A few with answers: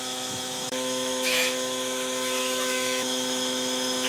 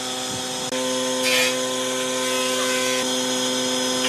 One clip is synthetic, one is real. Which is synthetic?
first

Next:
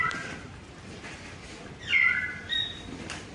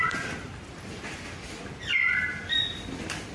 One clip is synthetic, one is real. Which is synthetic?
first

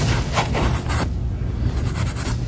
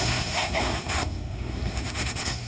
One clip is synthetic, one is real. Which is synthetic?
second